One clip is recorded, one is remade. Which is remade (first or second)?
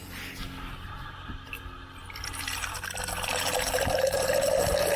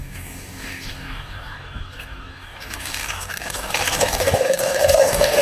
second